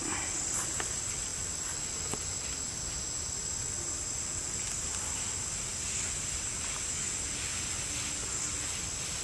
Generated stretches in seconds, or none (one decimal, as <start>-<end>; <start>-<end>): none